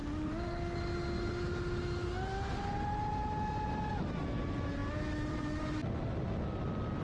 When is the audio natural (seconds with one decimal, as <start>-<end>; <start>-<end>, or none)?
0.0-7.0